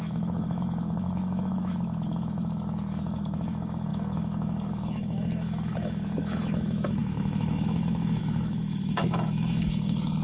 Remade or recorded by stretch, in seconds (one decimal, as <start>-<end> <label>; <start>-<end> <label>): 0.0-10.2 remade